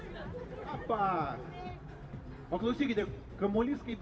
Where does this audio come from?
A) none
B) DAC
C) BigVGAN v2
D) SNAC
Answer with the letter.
C